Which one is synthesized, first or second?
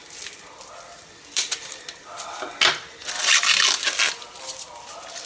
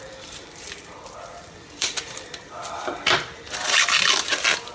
second